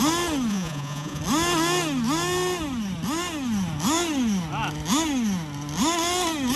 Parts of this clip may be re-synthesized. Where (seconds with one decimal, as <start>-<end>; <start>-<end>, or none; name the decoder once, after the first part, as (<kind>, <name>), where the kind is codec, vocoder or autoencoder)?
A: 0.5-1.2 (vocoder, Vocos)